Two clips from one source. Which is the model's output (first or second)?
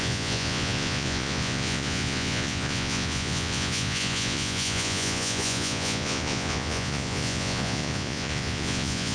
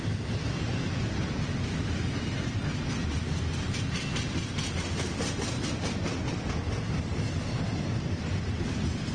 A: first